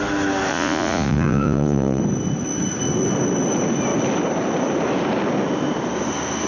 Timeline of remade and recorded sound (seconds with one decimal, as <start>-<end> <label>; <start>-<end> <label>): 0.0-0.5 recorded; 0.5-2.0 remade; 2.0-6.5 recorded